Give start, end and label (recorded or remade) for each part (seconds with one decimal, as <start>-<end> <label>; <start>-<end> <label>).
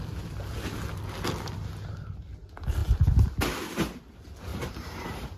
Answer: 0.0-4.5 recorded; 4.5-5.4 remade